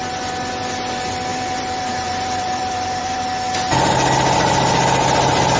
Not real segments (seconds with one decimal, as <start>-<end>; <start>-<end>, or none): 1.3-3.2